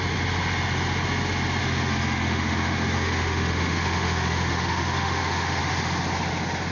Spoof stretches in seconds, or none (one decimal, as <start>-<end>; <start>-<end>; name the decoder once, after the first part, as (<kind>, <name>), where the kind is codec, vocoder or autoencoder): 1.6-5.6 (autoencoder, DAC-VAE)